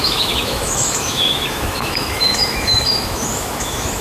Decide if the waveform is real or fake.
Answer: fake